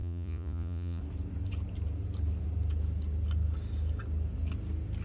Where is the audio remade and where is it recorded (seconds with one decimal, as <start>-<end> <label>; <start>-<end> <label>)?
0.0-1.0 remade; 1.0-5.0 recorded